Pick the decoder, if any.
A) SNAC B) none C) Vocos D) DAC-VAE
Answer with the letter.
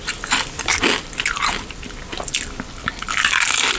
B